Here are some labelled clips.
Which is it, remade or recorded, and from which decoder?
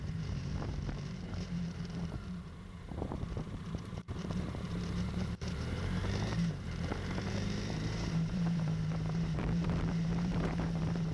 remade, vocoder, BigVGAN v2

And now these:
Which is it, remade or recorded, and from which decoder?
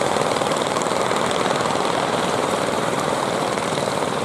remade, vocoder, BigVGAN v2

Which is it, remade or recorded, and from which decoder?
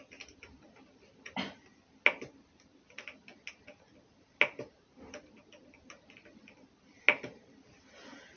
recorded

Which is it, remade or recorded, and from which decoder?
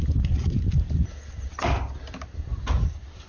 recorded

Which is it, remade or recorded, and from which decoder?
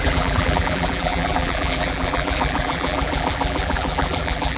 remade, vocoder, BigVGAN v2